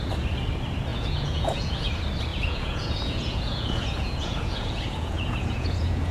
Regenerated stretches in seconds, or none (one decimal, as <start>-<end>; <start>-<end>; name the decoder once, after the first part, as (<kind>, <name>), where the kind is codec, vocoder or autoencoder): 0.9-1.9 (vocoder, Vocos); 2.3-6.1